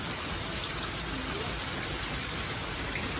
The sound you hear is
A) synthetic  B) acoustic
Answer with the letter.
B